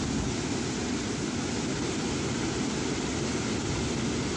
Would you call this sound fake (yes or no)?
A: no